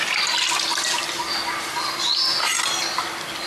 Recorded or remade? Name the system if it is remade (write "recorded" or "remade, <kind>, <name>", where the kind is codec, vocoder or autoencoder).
recorded